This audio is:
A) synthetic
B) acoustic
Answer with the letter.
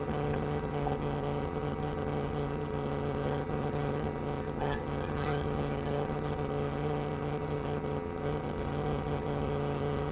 A